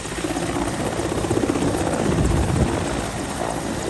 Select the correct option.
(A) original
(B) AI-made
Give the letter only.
A